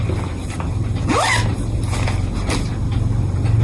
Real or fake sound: real